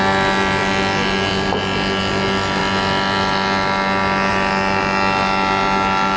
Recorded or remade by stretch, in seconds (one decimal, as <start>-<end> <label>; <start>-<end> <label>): 0.0-6.2 recorded